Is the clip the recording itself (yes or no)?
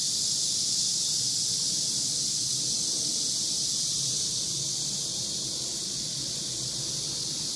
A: yes